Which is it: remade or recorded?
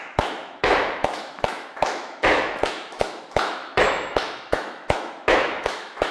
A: remade